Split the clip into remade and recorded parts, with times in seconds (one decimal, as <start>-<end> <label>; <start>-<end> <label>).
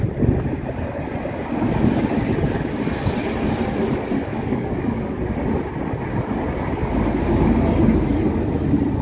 0.0-4.3 recorded; 4.3-5.1 remade; 5.1-9.0 recorded